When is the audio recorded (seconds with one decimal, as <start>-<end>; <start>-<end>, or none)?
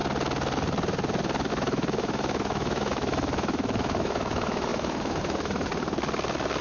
0.0-1.5; 5.7-6.6